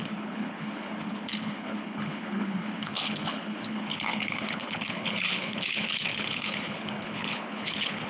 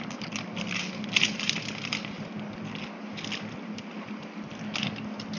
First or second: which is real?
second